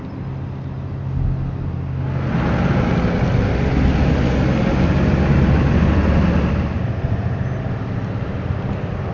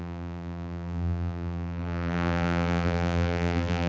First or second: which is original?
first